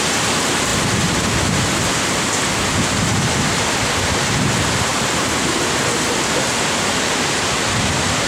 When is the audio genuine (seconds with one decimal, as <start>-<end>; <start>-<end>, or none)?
0.0-8.3